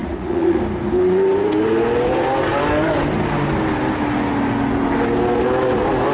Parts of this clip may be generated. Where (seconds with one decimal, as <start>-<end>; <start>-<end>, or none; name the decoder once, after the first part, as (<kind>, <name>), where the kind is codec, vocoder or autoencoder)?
0.0-0.6 (vocoder, Vocos)